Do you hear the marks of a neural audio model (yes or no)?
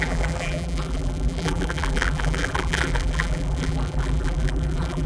yes